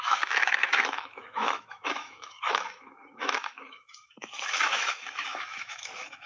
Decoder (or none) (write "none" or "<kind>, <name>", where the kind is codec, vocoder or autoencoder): autoencoder, DAC-VAE